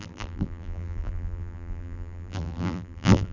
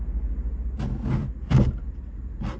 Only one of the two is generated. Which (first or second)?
first